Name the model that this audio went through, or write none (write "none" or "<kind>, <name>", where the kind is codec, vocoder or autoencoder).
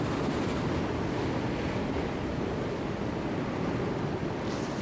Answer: none